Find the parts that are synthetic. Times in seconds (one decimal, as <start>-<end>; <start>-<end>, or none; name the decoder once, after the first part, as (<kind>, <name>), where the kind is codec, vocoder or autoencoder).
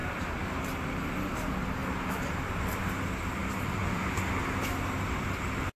0.0-0.6 (vocoder, BigVGAN v2); 1.8-2.3; 3.4-4.2